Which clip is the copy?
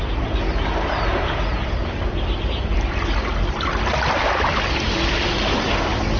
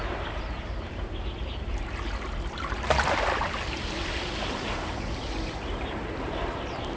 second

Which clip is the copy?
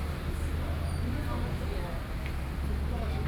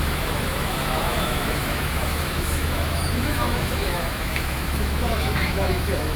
second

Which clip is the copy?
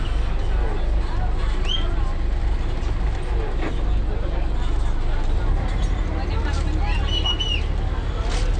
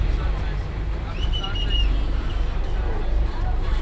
second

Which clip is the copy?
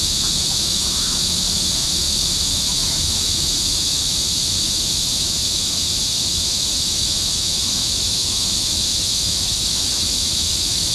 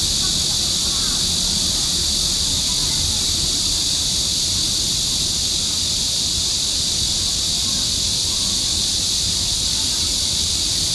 first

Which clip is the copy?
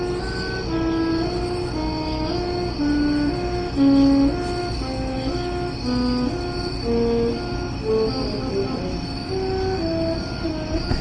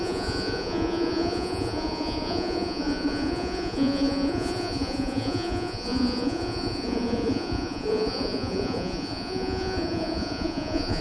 second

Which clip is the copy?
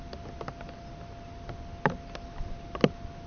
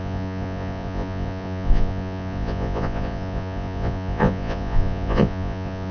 second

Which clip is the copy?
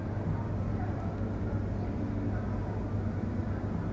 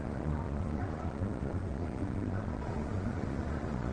second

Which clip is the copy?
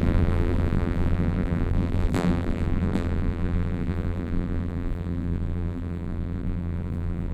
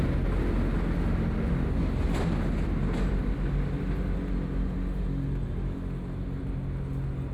first